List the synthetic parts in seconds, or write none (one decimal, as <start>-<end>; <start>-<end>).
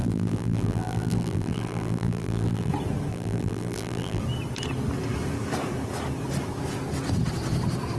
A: 0.0-2.7; 3.1-4.2